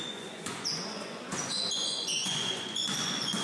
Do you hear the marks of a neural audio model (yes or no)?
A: yes